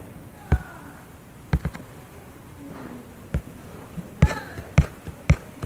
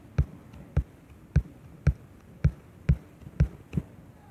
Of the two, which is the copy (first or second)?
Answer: first